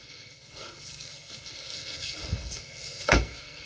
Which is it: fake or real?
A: fake